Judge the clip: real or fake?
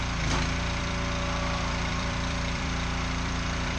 fake